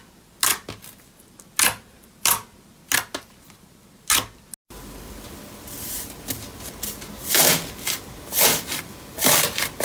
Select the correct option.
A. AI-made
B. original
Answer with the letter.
B